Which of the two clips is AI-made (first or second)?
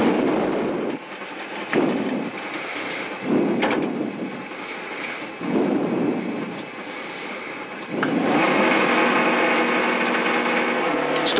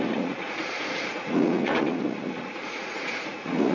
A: second